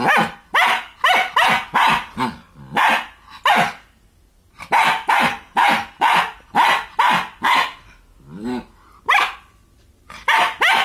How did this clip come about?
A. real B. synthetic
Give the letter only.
A